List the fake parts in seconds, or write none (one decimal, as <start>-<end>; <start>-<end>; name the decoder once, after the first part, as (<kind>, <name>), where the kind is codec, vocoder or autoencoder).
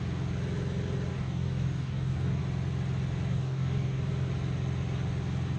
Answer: 1.1-2.4 (codec, DAC); 3.3-4.1